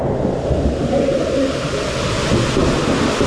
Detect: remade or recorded recorded